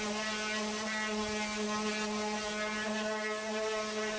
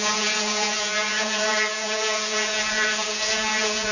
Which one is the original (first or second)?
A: first